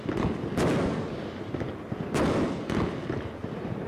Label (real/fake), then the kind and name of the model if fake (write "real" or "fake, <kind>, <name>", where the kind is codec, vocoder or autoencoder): real